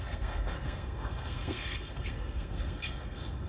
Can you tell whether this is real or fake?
fake